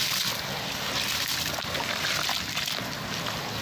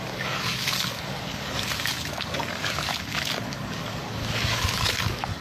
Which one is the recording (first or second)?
first